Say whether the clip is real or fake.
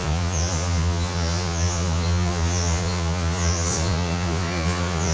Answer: fake